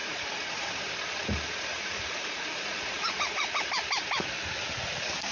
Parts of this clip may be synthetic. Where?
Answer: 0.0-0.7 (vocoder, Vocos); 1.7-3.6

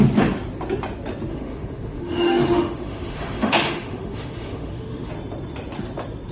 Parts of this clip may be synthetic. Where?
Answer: 1.3-5.1 (autoencoder, DAC-VAE)

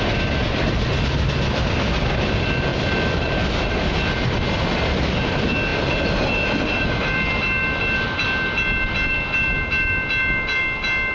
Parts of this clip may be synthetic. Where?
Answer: none

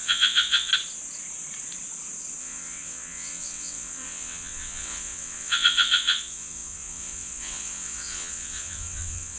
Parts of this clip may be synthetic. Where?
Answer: 0.0-0.7 (vocoder, WaveNeXt); 2.4-9.4

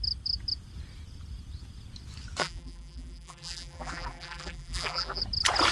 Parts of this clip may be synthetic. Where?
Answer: 2.4-5.2 (vocoder, BigVGAN v2)

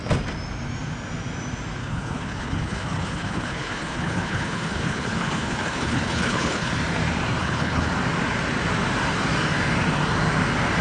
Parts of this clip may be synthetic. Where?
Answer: 1.8-6.7 (codec, HILCodec); 7.4-7.9

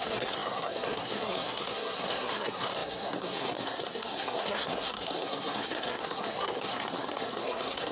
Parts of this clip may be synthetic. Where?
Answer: 0.0-7.9 (codec, SNAC)

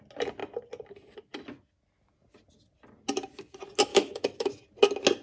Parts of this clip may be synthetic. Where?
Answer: 3.9-4.5 (autoencoder, DAC-VAE)